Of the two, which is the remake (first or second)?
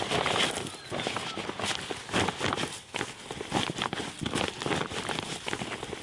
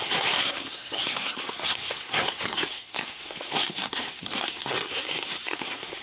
second